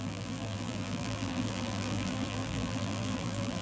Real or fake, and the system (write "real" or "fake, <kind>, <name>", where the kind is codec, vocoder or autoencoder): fake, vocoder, BigVGAN v2